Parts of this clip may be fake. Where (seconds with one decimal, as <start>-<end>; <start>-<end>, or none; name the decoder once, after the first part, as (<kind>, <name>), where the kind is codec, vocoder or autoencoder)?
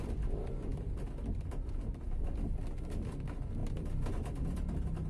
none